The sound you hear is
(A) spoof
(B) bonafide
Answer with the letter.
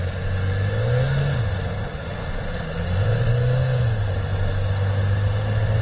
B